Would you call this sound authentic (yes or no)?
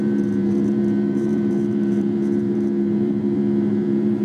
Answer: no